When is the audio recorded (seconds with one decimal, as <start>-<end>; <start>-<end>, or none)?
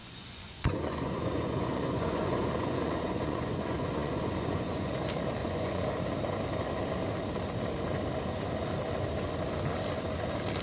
4.9-5.4; 5.9-10.6